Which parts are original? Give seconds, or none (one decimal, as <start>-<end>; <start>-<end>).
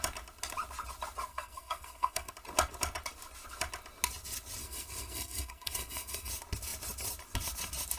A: 0.0-1.3; 2.3-4.6; 6.3-8.0